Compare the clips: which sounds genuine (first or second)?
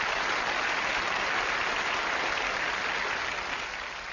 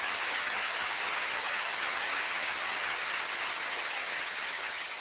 first